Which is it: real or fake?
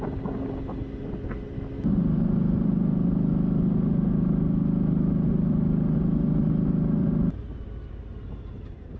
real